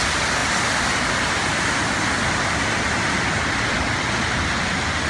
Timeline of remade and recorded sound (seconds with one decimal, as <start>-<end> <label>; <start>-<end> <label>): 0.0-5.1 recorded